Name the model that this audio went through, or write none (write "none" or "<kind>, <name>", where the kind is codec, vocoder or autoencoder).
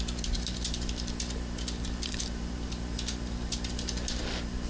none